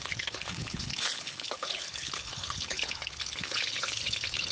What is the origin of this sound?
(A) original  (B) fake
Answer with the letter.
B